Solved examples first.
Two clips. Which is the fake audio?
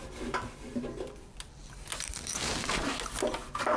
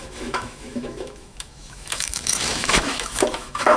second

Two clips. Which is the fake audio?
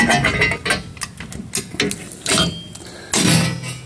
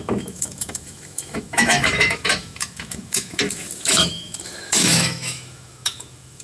second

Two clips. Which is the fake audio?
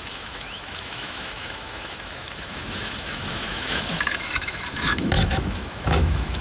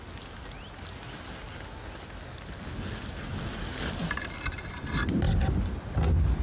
first